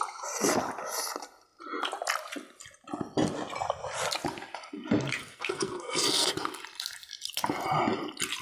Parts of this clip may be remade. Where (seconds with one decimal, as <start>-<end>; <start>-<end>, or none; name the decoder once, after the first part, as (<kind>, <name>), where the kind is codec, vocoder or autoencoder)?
5.2-6.3 (codec, SNAC)